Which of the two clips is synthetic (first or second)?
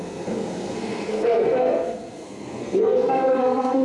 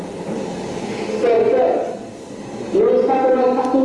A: first